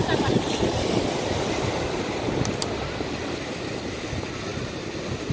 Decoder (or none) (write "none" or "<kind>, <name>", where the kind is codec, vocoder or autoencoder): none